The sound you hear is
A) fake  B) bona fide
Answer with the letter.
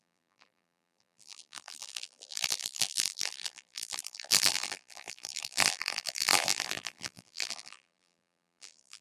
A